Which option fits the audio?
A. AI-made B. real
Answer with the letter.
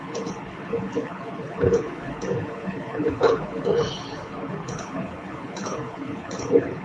A